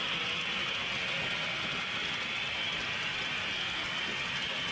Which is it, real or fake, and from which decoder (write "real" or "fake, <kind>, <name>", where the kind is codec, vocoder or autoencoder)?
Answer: real